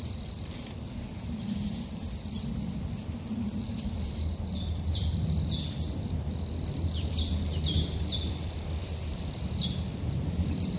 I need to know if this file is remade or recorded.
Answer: remade